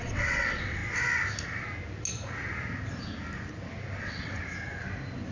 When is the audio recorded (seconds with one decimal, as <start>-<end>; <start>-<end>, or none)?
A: 0.8-4.0; 4.4-5.3